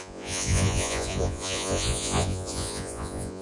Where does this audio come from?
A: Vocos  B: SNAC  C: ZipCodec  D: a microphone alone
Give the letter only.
A